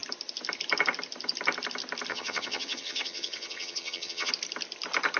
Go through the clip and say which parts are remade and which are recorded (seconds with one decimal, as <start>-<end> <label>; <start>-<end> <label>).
0.0-2.1 recorded; 2.1-4.3 remade; 4.3-5.2 recorded